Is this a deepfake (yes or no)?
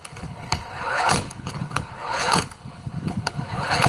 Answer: yes